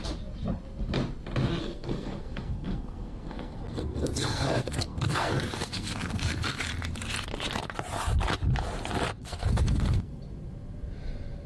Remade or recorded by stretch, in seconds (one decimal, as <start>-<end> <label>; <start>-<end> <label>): 0.0-1.6 recorded; 1.6-6.6 remade; 6.6-9.2 recorded; 9.2-10.2 remade; 10.2-11.5 recorded